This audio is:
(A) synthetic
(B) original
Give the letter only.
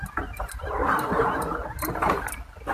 B